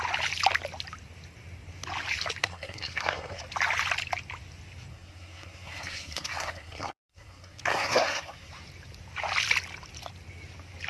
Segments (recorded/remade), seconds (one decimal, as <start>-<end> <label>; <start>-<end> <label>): 0.0-2.4 recorded; 2.4-3.4 remade; 3.4-4.9 recorded; 4.9-8.5 remade; 8.5-10.9 recorded